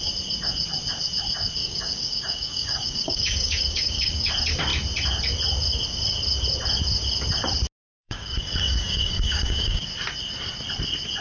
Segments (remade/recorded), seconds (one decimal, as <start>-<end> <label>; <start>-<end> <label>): 0.0-1.6 recorded; 1.6-4.3 remade; 4.3-7.9 recorded; 7.9-9.8 remade; 9.8-11.2 recorded